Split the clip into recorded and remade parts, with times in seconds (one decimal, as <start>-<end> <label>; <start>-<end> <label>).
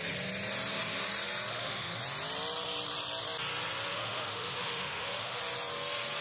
0.0-1.5 recorded; 1.5-2.0 remade; 2.0-3.9 recorded; 3.9-5.4 remade; 5.4-6.2 recorded